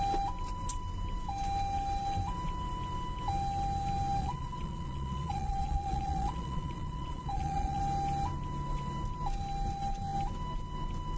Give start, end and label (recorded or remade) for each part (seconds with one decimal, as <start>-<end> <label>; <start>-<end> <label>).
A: 0.0-4.2 recorded; 4.2-7.8 remade; 7.8-11.2 recorded